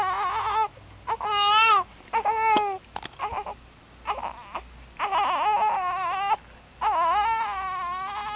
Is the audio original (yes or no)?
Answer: yes